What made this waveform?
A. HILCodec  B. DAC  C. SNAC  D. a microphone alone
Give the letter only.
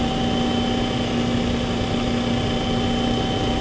D